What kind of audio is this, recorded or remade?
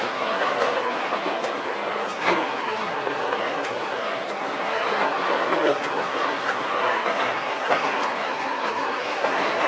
remade